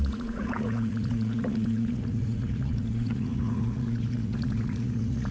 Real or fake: fake